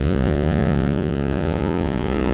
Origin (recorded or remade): remade